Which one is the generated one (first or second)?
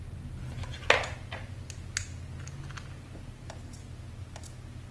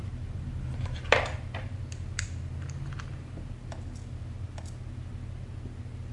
second